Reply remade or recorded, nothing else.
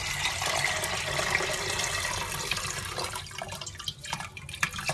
recorded